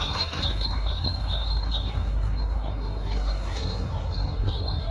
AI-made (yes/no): yes